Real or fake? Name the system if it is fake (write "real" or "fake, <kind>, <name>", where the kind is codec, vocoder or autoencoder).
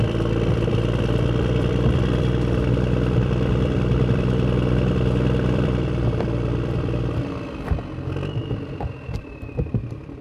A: fake, vocoder, BigVGAN v2